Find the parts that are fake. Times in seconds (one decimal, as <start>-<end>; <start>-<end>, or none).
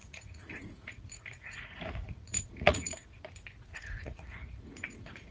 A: 0.0-3.2; 3.7-5.3